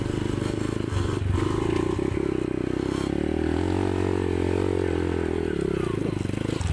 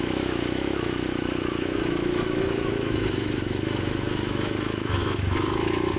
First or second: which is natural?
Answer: first